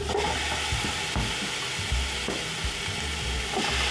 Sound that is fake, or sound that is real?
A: real